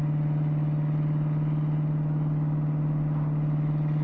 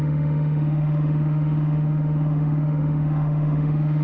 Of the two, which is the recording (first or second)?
first